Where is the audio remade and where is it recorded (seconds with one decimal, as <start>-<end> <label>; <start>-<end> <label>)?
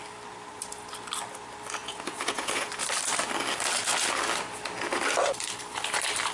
0.0-1.8 recorded; 1.8-2.7 remade; 2.7-6.3 recorded